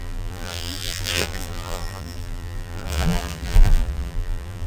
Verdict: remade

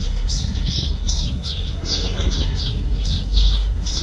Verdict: remade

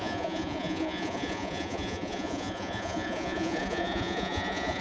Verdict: remade